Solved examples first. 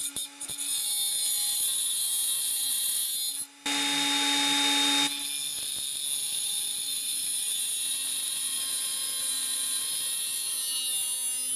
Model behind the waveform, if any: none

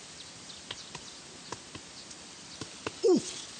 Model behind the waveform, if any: none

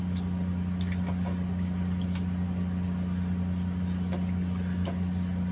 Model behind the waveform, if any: none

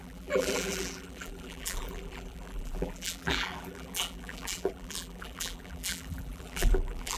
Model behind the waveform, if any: vocoder, BigVGAN v2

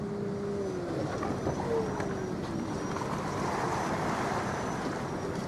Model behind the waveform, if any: none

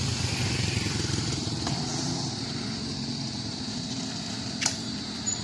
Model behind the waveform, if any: vocoder, BigVGAN v2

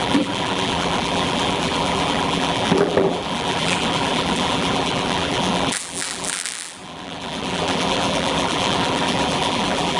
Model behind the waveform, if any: vocoder, BigVGAN v2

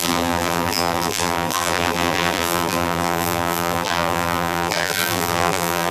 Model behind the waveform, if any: vocoder, BigVGAN v2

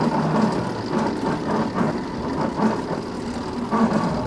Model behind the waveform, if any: none